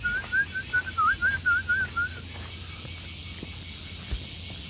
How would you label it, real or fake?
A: real